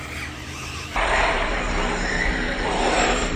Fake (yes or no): yes